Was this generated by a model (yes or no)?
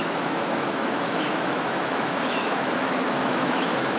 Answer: yes